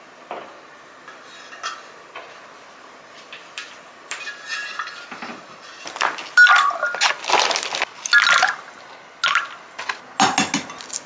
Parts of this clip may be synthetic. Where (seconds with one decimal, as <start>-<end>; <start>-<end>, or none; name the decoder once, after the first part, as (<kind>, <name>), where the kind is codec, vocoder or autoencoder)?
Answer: none